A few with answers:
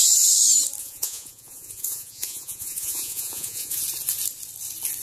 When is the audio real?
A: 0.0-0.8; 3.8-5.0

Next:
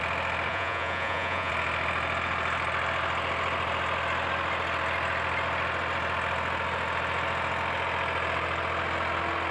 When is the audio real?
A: 0.0-0.5; 1.5-9.5

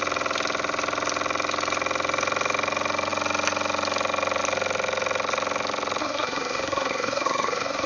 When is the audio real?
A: 0.0-6.0

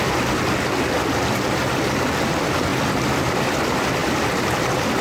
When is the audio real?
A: 0.0-2.7; 3.6-4.0

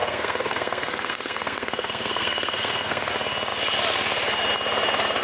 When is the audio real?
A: 3.1-5.2

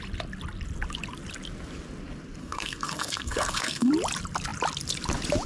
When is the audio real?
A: 0.0-2.4; 3.9-5.5

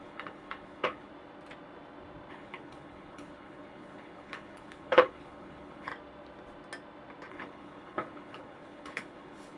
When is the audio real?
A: 1.1-2.3; 5.9-7.3